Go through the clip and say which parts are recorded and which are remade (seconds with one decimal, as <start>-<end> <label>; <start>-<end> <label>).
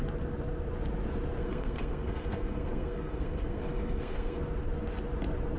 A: 0.0-1.4 recorded; 1.4-4.4 remade; 4.4-5.6 recorded